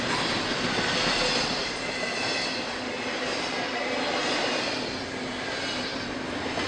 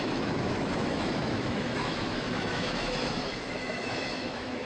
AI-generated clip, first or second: second